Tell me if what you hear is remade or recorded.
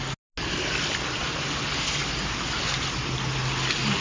recorded